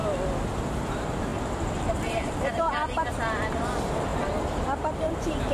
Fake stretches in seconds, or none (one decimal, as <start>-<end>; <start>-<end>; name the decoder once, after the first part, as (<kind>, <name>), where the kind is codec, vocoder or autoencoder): 0.7-4.1 (vocoder, BigVGAN v2); 5.0-5.5